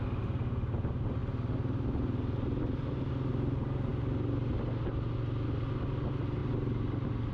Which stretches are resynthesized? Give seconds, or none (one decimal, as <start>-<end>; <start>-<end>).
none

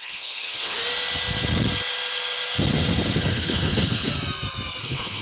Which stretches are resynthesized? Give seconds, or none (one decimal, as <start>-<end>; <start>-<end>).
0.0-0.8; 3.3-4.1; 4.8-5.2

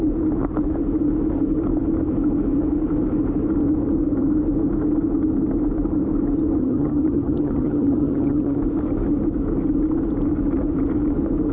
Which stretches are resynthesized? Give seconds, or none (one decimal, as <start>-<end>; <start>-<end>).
6.6-8.6